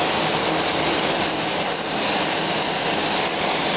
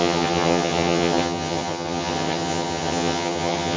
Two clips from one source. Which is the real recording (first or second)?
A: first